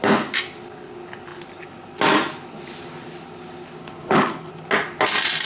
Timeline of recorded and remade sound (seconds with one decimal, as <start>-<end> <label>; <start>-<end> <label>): 0.0-3.8 recorded; 3.8-4.5 remade; 4.5-5.4 recorded